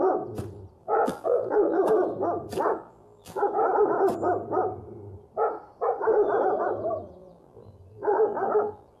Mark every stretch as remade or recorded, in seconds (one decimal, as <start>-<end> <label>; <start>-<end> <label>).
0.0-0.8 recorded; 0.8-1.8 remade; 1.8-2.7 recorded; 2.7-3.4 remade; 3.4-7.2 recorded; 7.2-9.0 remade